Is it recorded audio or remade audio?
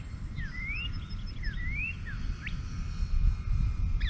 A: remade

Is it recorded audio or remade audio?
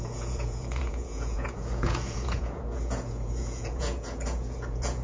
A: remade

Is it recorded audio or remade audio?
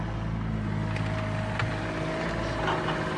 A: recorded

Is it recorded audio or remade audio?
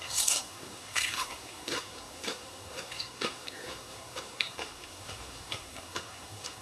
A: remade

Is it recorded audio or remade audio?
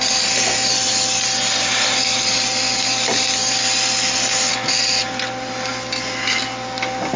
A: recorded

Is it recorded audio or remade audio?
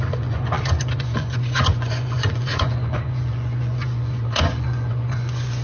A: remade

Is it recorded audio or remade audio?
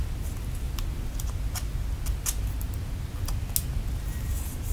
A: recorded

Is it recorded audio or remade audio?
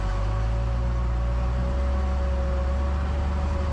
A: recorded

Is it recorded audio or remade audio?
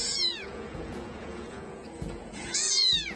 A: remade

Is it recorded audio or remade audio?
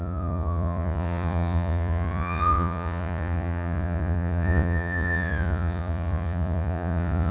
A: remade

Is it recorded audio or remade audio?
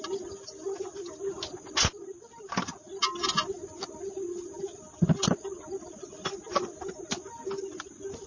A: recorded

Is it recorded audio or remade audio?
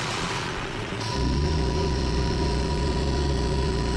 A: remade